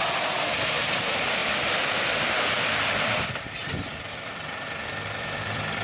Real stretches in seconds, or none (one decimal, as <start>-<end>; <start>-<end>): 0.0-1.4; 2.5-3.9